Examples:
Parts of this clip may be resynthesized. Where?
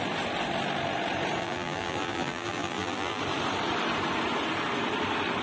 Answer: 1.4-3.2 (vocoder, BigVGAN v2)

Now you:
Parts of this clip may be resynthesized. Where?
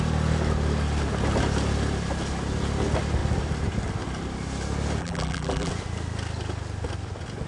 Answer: 5.0-5.7 (vocoder, BigVGAN v2)